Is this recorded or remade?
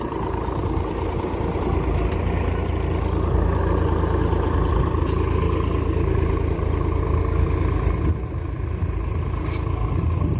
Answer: recorded